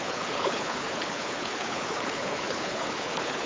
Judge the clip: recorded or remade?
remade